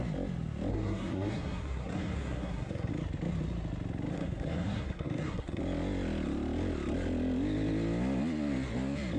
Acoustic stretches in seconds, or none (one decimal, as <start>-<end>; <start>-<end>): 0.0-0.7; 2.9-4.1; 5.6-9.2